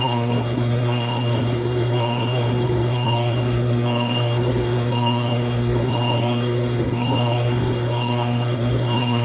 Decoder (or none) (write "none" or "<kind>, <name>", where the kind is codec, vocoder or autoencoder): codec, SNAC